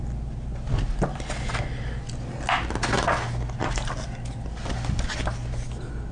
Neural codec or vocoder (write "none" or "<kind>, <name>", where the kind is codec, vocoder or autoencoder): none